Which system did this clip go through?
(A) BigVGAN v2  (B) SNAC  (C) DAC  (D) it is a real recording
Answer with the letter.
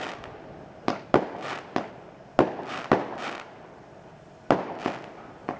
D